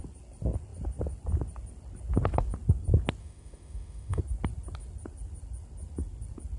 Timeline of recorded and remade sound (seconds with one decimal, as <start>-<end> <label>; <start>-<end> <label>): 0.0-3.2 recorded; 3.2-4.2 remade; 4.2-6.6 recorded